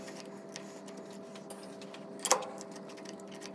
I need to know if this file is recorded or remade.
recorded